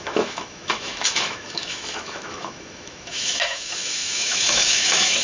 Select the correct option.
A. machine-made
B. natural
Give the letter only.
A